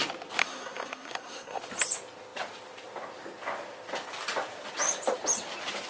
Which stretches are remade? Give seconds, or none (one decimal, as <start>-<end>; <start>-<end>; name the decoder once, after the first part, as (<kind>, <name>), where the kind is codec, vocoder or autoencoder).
0.4-1.6 (codec, SNAC)